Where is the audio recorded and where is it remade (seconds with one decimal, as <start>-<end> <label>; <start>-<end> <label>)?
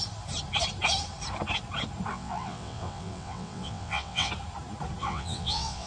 0.0-2.1 recorded; 2.1-4.3 remade; 4.3-5.0 recorded; 5.0-5.9 remade